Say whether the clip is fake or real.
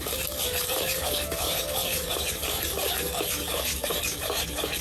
fake